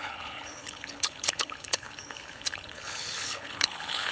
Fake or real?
fake